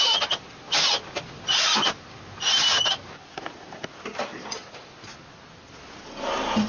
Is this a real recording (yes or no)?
yes